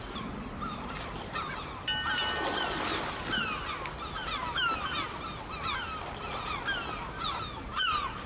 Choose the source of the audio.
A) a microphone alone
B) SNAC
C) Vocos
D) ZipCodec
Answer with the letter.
A